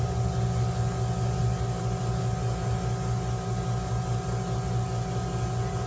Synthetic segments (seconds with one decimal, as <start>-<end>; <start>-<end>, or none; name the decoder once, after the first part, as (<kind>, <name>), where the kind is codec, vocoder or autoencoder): none